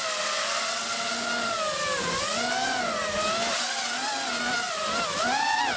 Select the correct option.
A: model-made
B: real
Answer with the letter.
B